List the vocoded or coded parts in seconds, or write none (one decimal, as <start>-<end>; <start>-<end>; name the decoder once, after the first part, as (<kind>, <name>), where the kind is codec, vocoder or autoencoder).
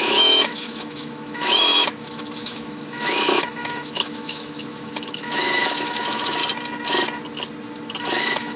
0.0-6.4 (autoencoder, DAC-VAE); 8.0-8.6